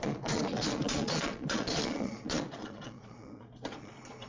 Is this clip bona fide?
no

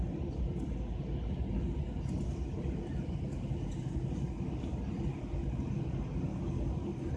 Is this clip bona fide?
yes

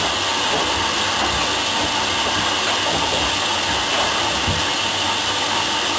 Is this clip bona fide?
yes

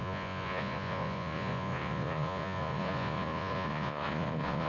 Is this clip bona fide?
no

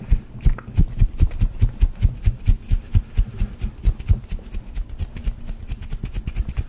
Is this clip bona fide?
yes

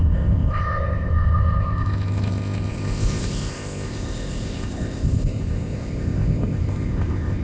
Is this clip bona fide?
no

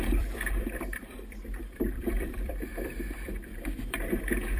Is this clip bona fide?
no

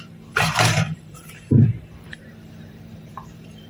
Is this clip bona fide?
no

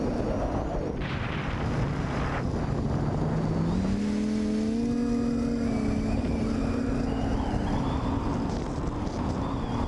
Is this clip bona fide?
yes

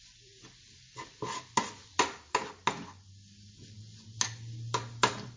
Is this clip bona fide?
yes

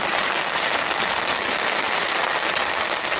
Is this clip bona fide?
yes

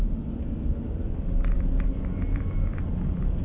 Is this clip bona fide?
yes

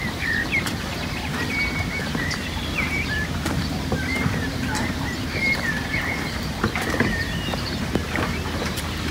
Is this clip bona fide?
no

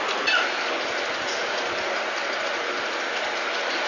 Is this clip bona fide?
yes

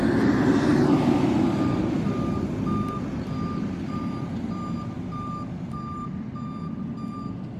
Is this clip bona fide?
yes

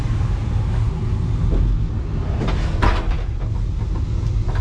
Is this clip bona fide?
yes